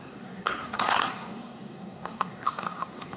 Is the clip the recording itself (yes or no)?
no